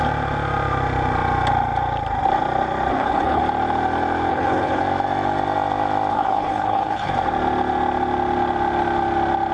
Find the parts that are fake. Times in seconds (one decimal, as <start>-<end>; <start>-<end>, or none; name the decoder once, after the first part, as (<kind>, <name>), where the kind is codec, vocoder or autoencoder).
2.9-3.4 (codec, HILCodec); 4.3-4.8; 6.1-7.1